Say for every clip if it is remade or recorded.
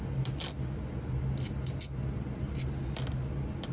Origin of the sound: recorded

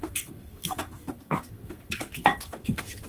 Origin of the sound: remade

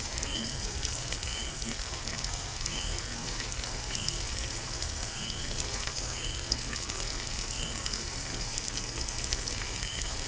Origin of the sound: remade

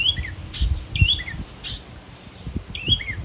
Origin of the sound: recorded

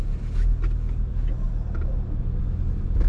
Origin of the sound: recorded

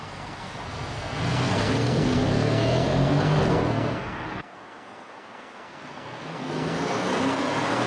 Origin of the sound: remade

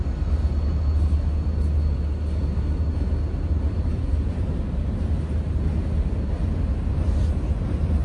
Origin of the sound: recorded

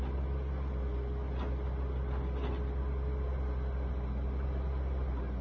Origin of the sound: recorded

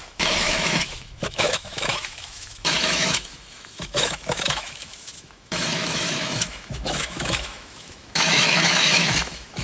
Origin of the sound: remade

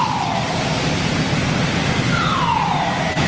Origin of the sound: recorded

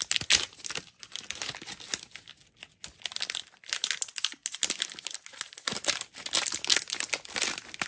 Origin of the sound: recorded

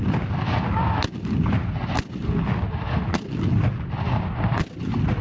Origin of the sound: recorded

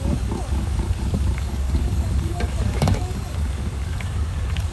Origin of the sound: remade